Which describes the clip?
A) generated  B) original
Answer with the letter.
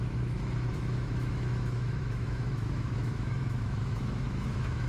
A